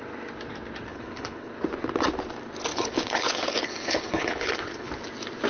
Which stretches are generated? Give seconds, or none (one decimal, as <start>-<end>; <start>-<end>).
0.9-1.5; 2.7-4.9